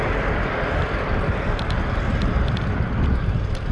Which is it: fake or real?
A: real